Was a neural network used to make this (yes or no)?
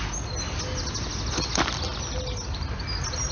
no